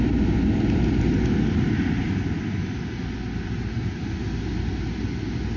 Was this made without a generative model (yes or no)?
yes